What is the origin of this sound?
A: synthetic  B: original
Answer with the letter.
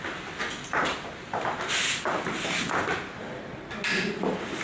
B